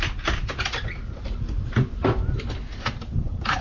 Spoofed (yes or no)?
no